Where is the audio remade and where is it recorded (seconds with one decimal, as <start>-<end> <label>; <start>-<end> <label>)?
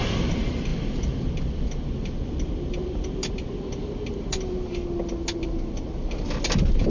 0.0-6.9 recorded